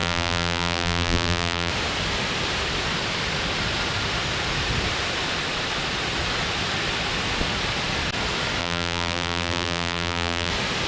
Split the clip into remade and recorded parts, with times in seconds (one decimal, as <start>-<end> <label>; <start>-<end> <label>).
0.0-1.7 remade; 1.7-8.6 recorded; 8.6-10.5 remade; 10.5-10.9 recorded